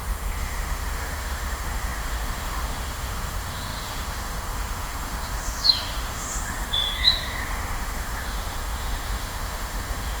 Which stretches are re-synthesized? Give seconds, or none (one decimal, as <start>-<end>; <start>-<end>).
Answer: 0.0-10.2